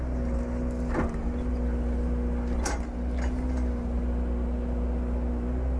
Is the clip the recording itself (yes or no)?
yes